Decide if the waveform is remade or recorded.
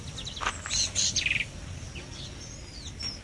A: recorded